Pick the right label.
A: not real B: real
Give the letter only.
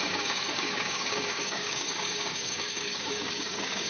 A